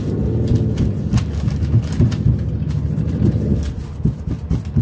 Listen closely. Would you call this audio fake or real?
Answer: real